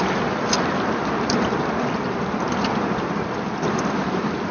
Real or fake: real